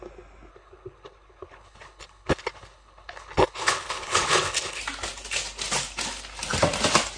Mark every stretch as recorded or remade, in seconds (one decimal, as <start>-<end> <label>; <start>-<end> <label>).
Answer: 0.0-0.5 recorded; 0.5-4.8 remade; 4.8-7.2 recorded